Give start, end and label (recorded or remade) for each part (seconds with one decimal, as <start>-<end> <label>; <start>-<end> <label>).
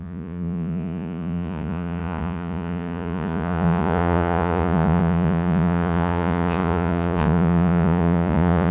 0.0-8.7 remade